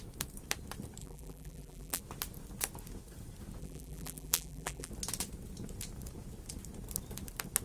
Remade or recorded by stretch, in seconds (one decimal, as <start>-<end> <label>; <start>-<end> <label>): 0.0-1.0 recorded; 1.0-2.0 remade; 2.0-3.6 recorded; 3.6-4.9 remade; 4.9-7.6 recorded